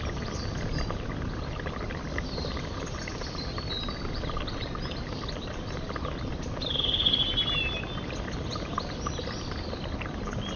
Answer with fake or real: real